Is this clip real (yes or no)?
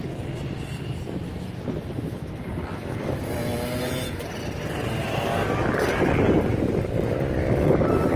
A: yes